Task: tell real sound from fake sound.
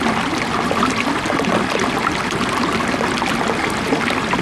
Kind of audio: real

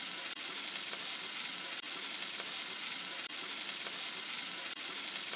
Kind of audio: real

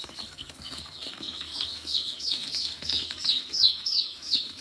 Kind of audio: fake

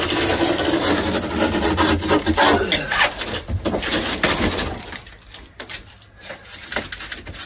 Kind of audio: real